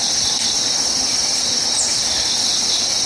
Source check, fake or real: real